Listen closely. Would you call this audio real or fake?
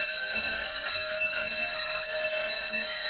fake